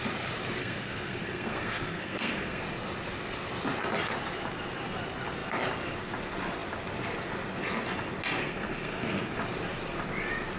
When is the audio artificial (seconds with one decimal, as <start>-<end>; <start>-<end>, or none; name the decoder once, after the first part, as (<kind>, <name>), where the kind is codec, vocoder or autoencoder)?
0.6-2.6 (codec, SNAC); 8.4-9.4